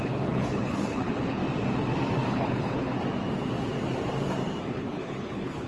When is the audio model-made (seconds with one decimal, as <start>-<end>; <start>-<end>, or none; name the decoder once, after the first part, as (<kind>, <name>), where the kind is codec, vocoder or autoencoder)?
0.0-1.4 (codec, HILCodec); 2.3-2.9; 4.7-5.7